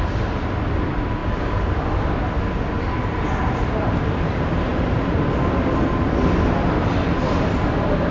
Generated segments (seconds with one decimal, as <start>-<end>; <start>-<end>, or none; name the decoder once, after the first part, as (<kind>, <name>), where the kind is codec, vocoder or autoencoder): none